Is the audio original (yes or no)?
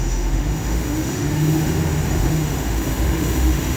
no